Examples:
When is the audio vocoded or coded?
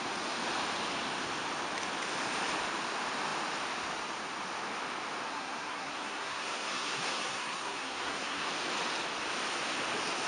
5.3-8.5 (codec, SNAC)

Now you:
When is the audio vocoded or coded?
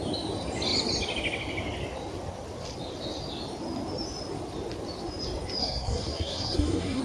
5.6-7.0 (codec, SNAC)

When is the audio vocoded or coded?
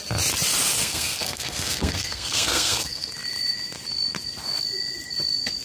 0.8-3.1 (codec, SNAC)